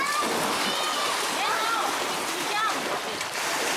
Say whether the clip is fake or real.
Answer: real